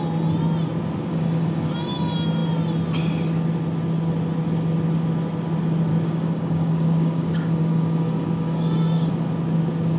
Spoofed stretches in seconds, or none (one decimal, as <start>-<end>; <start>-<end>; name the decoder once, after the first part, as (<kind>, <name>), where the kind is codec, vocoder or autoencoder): 1.1-1.7 (codec, DAC); 5.9-9.1